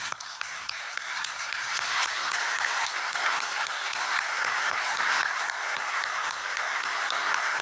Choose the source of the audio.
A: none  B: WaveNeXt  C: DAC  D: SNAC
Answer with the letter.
D